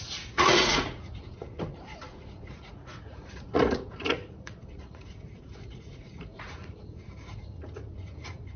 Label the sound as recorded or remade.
remade